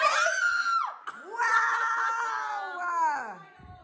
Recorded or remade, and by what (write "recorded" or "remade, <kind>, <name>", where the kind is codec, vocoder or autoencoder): recorded